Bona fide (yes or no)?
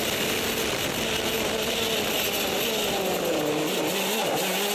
yes